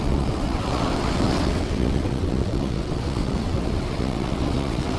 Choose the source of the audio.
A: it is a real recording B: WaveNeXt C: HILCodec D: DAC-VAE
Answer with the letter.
B